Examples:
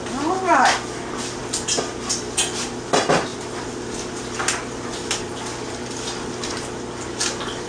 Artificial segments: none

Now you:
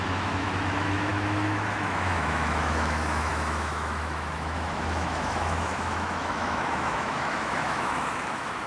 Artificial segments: 0.0-8.7 (autoencoder, DAC-VAE)

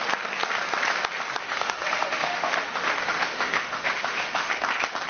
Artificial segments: 1.4-4.5 (autoencoder, DAC-VAE)